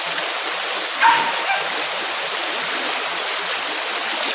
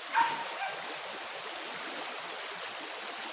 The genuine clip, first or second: first